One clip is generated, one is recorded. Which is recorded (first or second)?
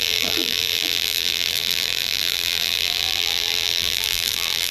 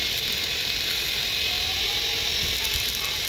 second